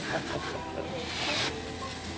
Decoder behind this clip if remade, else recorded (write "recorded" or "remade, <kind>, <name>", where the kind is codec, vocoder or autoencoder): recorded